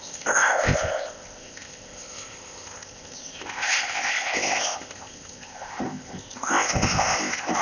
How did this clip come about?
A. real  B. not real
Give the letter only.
B